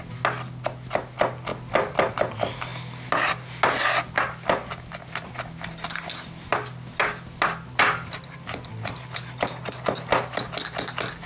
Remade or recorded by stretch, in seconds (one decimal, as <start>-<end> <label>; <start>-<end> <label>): 0.0-11.3 recorded